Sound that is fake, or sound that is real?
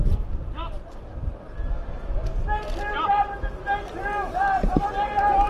real